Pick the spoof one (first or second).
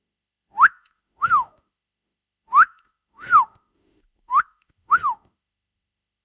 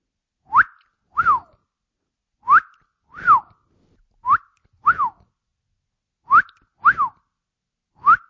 first